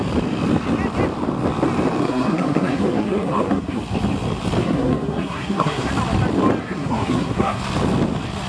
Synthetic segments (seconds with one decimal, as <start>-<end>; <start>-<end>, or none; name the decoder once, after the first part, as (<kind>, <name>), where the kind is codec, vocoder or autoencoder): 2.0-3.8 (codec, SNAC); 4.6-5.9; 6.6-7.6